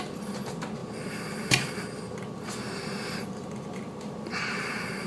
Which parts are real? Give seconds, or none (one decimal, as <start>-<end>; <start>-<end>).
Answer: 0.0-5.1